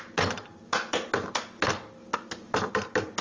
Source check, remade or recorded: recorded